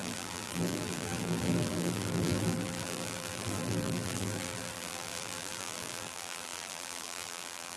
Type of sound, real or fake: fake